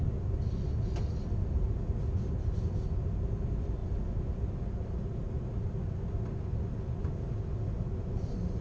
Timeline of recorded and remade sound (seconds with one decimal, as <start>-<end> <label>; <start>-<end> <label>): 0.0-8.6 recorded